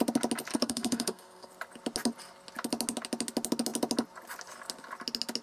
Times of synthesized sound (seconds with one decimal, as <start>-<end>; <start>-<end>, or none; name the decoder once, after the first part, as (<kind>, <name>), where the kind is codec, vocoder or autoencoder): 0.5-1.5 (codec, SNAC)